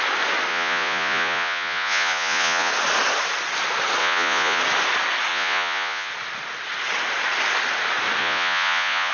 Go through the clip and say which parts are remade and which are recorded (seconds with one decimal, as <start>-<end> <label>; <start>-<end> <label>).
0.0-0.5 recorded; 0.5-2.7 remade; 2.7-4.0 recorded; 4.0-4.6 remade; 4.6-5.3 recorded; 5.3-6.1 remade; 6.1-8.2 recorded; 8.2-9.1 remade